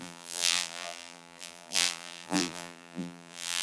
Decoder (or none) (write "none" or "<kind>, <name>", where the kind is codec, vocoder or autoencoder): vocoder, BigVGAN v2